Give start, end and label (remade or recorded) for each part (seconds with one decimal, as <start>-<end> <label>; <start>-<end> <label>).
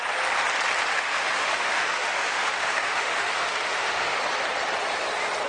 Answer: 0.0-0.9 recorded; 0.9-4.2 remade; 4.2-5.5 recorded